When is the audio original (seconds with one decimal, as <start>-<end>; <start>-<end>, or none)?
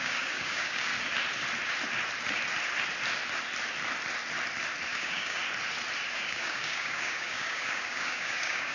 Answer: 0.9-4.9; 5.4-6.1